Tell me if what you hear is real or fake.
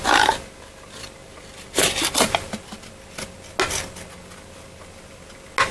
real